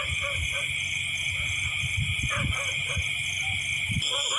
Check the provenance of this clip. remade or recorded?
recorded